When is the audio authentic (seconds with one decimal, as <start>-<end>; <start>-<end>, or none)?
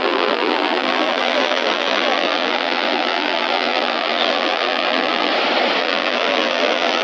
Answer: 5.3-5.8